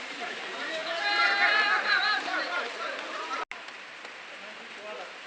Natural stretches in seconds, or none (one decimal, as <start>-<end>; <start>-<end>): 0.0-5.3